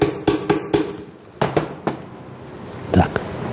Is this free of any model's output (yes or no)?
yes